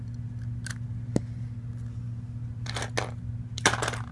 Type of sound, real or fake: real